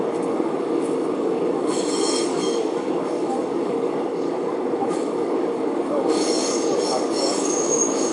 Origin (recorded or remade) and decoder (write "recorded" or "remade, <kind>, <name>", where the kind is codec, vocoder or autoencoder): remade, codec, DAC